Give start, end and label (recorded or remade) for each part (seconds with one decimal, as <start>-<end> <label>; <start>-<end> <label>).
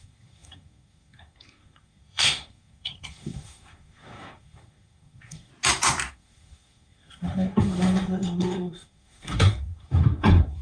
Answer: 0.0-5.5 remade; 5.5-6.1 recorded; 6.1-10.6 remade